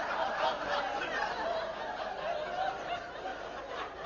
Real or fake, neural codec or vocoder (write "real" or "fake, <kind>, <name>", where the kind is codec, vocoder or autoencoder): real